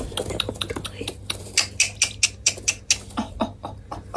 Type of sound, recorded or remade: recorded